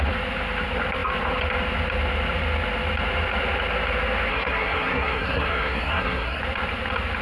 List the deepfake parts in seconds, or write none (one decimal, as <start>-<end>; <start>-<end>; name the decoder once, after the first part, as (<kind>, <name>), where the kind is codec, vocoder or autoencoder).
4.3-6.4 (codec, SNAC)